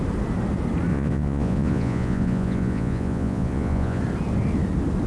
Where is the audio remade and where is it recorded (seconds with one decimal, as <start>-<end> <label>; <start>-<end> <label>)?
0.0-0.9 recorded; 0.9-4.0 remade; 4.0-5.1 recorded